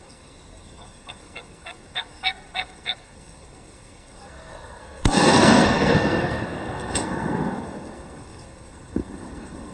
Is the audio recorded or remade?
remade